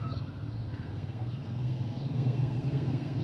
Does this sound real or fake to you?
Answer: fake